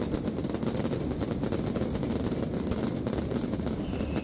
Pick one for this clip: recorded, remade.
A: recorded